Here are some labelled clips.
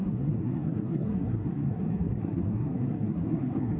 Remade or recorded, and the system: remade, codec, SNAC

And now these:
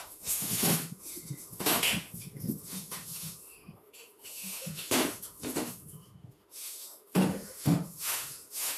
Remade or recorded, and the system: remade, autoencoder, DAC-VAE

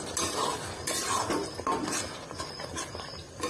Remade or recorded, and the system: recorded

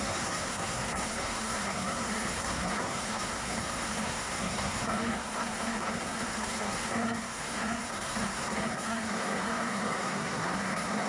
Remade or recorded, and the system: remade, codec, SNAC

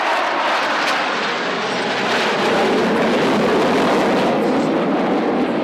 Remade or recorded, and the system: recorded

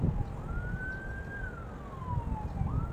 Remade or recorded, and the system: recorded